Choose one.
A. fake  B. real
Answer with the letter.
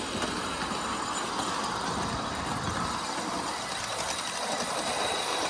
B